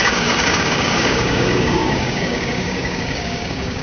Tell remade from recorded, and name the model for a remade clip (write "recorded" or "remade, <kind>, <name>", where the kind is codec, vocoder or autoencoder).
remade, codec, DAC